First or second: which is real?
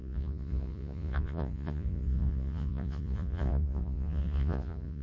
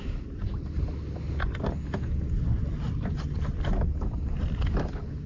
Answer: second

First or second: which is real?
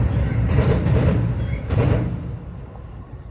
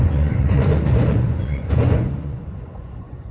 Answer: first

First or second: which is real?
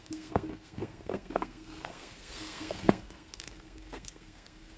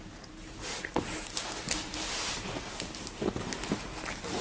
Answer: second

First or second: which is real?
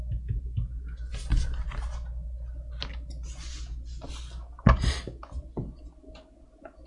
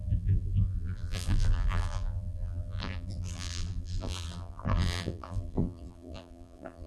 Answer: first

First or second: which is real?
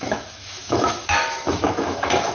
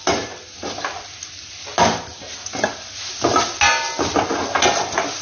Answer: second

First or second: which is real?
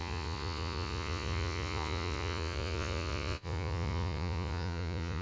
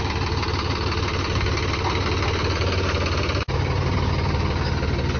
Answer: second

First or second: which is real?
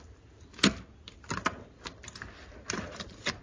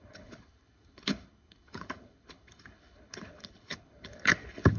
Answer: first